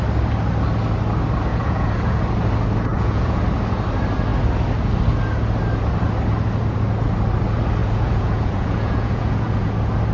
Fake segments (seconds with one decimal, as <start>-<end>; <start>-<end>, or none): 1.5-2.2; 2.9-3.4; 7.8-9.7